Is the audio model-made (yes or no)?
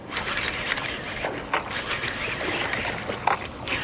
no